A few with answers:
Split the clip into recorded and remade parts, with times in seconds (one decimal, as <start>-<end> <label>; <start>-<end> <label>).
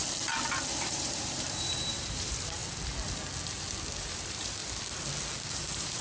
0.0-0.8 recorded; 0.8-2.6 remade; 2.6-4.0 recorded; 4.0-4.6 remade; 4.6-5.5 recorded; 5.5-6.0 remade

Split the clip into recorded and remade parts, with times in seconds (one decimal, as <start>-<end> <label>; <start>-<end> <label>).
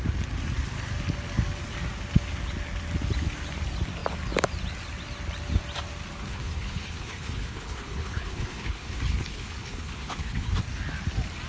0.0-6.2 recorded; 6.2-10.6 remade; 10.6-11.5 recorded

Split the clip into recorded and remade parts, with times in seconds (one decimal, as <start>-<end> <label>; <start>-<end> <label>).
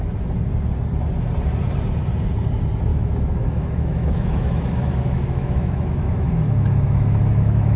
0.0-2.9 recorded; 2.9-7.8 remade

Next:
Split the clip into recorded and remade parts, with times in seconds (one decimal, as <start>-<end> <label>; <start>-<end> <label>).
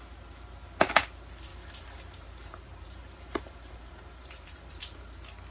0.0-1.5 recorded; 1.5-4.8 remade; 4.8-5.5 recorded